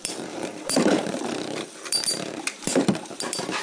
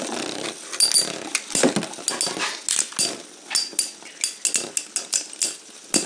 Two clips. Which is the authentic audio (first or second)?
second